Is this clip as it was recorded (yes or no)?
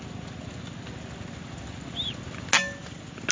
yes